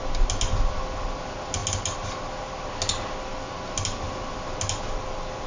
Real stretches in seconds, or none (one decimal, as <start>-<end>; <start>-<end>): 0.0-5.5